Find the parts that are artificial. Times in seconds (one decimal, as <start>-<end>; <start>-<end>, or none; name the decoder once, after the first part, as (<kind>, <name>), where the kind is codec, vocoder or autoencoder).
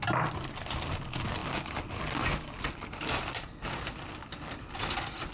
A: none